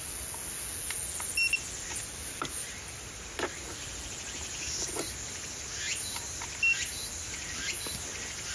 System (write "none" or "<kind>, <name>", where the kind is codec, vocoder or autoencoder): none